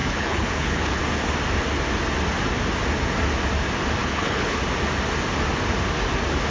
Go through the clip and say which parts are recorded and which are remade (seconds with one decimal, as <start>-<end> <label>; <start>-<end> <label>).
0.0-1.0 remade; 1.0-4.0 recorded; 4.0-4.6 remade; 4.6-6.5 recorded